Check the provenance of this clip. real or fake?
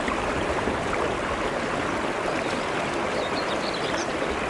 fake